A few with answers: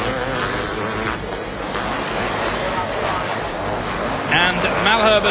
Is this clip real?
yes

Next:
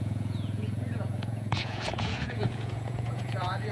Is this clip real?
no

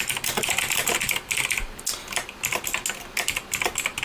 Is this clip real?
yes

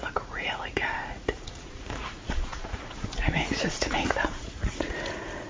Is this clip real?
no